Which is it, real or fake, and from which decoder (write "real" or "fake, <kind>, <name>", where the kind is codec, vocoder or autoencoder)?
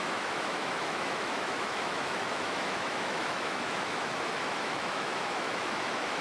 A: fake, autoencoder, DAC-VAE